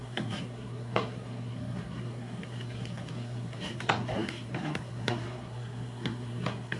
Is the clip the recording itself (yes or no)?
no